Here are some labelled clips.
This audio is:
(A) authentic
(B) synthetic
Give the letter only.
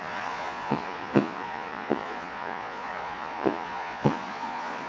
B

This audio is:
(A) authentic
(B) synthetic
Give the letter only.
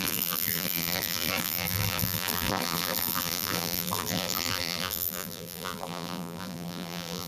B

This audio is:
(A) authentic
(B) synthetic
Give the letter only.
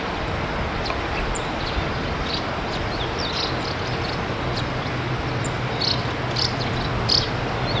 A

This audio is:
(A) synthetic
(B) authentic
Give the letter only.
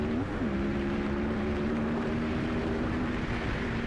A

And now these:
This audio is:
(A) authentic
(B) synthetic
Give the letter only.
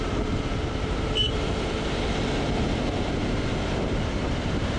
B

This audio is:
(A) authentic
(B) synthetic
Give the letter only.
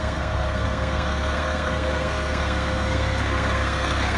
B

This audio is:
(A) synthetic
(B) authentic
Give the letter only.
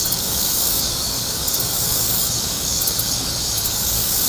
A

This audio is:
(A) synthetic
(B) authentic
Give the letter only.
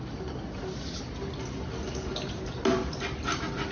B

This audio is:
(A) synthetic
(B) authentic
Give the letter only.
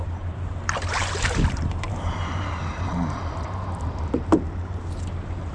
A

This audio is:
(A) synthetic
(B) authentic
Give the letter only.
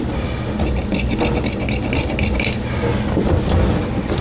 B